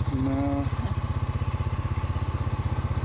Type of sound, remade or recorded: recorded